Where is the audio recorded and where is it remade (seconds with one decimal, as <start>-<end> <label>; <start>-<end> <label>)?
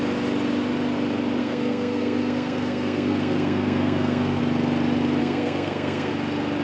0.0-1.4 recorded; 1.4-4.4 remade; 4.4-5.2 recorded; 5.2-6.1 remade; 6.1-6.6 recorded